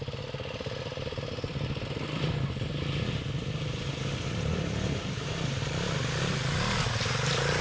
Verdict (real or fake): fake